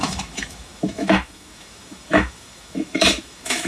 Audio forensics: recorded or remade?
remade